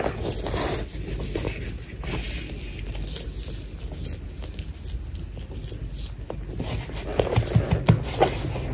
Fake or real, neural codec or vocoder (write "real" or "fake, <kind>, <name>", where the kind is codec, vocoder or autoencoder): real